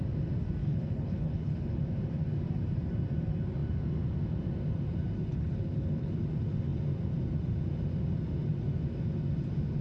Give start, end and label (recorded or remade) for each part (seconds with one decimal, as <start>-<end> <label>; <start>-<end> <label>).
0.0-0.6 recorded; 0.6-1.8 remade; 1.8-5.3 recorded; 5.3-6.1 remade; 6.1-9.8 recorded